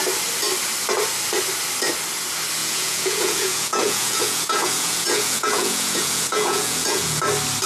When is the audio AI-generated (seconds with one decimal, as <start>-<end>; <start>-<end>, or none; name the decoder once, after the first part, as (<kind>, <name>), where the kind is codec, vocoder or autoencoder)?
2.6-7.2 (vocoder, Vocos)

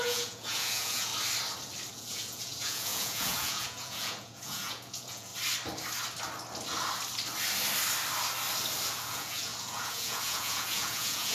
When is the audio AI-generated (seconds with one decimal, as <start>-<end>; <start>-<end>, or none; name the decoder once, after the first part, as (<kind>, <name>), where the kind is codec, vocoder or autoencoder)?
0.0-1.1 (vocoder, Vocos); 1.9-5.3; 8.9-11.3

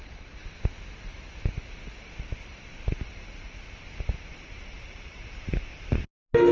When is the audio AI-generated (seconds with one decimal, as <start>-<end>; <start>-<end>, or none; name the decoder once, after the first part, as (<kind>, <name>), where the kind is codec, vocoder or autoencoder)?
none

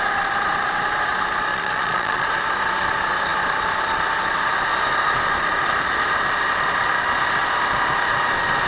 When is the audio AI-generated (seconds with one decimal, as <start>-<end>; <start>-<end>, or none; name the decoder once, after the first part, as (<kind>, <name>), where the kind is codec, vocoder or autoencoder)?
1.5-2.3 (vocoder, Vocos)

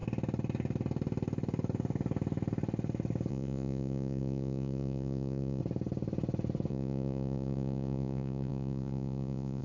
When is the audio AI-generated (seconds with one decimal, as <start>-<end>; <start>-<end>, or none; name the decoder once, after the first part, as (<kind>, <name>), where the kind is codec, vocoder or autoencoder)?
3.3-5.6 (vocoder, Vocos); 6.7-9.6

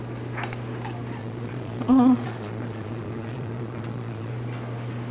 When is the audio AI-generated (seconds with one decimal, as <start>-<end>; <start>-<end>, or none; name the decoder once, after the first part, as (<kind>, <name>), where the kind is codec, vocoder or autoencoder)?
1.2-4.3 (vocoder, Vocos)

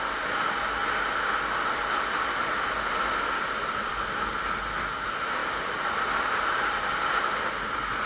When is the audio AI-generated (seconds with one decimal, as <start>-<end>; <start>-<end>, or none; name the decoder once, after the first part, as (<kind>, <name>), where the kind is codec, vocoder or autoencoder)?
none

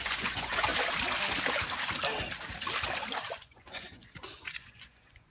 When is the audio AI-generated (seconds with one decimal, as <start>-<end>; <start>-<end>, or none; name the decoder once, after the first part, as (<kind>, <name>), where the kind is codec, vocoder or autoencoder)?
0.0-0.7 (vocoder, Vocos); 3.3-5.3